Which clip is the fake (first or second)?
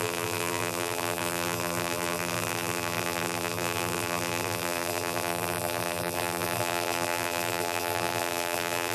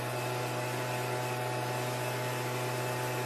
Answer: first